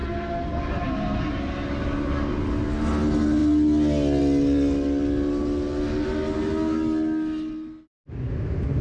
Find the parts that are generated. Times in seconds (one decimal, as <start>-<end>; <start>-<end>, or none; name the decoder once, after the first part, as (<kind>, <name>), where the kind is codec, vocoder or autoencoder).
none